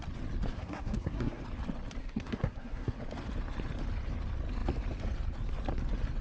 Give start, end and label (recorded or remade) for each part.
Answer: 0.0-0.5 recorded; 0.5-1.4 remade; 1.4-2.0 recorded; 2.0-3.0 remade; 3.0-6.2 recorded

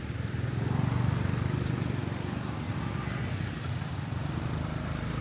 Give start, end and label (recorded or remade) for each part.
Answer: 0.0-5.2 recorded

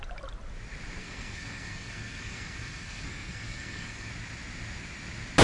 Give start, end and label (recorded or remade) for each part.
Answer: 0.0-1.0 recorded; 1.0-4.1 remade; 4.1-5.4 recorded

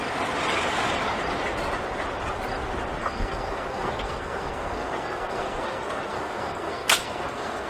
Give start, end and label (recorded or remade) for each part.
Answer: 0.0-3.0 recorded; 3.0-7.7 remade

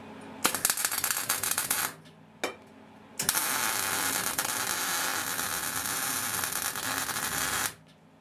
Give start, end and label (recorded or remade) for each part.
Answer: 0.0-8.2 recorded